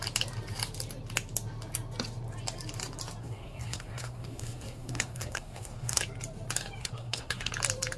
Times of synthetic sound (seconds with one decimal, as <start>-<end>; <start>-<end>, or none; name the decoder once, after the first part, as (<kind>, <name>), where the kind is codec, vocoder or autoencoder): 3.2-6.0 (codec, SNAC); 6.8-7.5